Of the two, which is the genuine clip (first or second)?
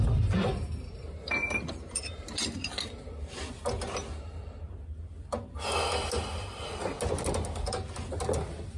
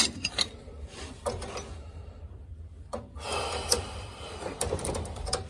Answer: first